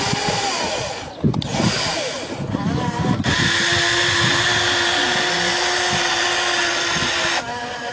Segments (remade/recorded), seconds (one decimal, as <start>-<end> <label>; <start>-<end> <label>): 0.0-7.9 recorded

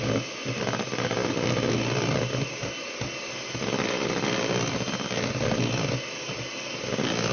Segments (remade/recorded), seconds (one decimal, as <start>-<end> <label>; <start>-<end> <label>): 0.0-7.3 recorded

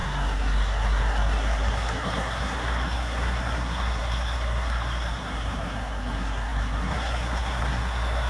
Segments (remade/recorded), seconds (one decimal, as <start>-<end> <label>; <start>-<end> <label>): 0.0-8.3 remade

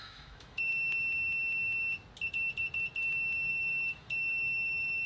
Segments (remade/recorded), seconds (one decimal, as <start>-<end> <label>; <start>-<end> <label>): 0.0-0.7 remade; 0.7-3.5 recorded; 3.5-5.1 remade

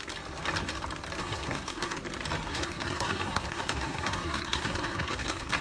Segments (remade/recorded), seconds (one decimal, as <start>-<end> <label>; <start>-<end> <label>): 0.0-1.2 recorded; 1.2-2.0 remade; 2.0-2.5 recorded; 2.5-5.6 remade

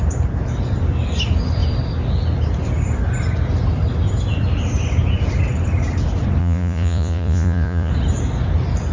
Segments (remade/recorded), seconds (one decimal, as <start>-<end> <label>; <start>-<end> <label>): 0.0-6.4 recorded; 6.4-7.9 remade; 7.9-8.9 recorded

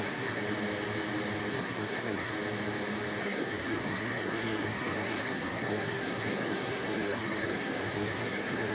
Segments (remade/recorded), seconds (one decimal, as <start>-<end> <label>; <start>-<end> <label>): 0.0-0.4 remade; 0.4-1.5 recorded; 1.5-2.3 remade; 2.3-3.2 recorded; 3.2-8.7 remade